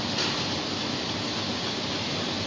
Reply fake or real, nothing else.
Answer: real